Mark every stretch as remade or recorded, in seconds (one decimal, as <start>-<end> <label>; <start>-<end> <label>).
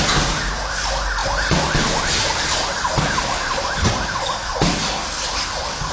0.0-5.9 recorded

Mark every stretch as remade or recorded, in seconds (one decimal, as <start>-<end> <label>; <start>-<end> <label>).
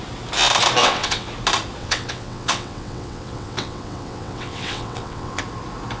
0.0-0.8 recorded; 0.8-1.3 remade; 1.3-1.8 recorded; 1.8-5.4 remade; 5.4-6.0 recorded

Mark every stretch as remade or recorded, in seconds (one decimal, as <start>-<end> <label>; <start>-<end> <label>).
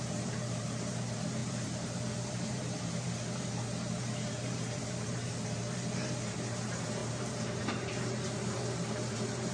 0.0-9.5 remade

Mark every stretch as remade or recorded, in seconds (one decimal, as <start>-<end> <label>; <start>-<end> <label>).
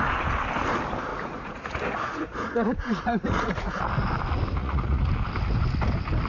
0.0-1.1 recorded; 1.1-3.8 remade; 3.8-4.6 recorded; 4.6-5.1 remade; 5.1-6.3 recorded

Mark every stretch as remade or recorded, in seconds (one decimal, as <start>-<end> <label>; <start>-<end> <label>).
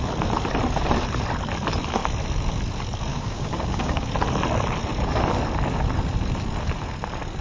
0.0-3.1 recorded; 3.1-4.1 remade; 4.1-7.4 recorded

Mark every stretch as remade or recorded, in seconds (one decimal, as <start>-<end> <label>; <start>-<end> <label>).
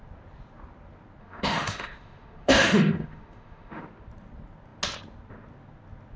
0.0-1.2 recorded; 1.2-3.8 remade; 3.8-6.2 recorded